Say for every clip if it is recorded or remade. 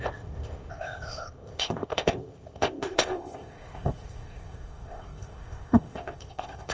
remade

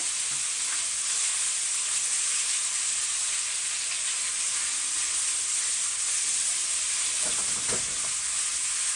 recorded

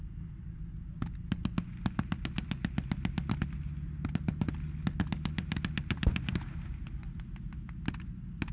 recorded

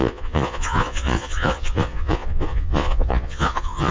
remade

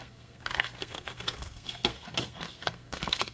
remade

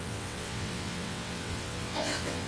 remade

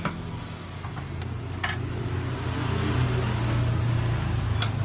recorded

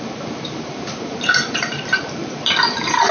remade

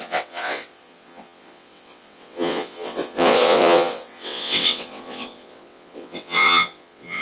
remade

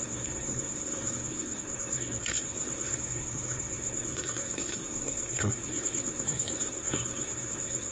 remade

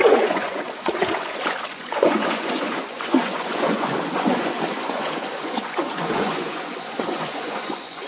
remade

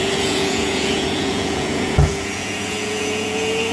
remade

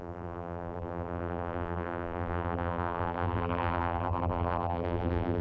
remade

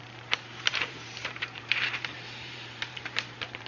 remade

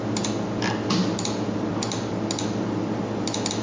recorded